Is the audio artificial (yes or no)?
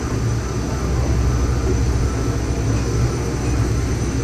no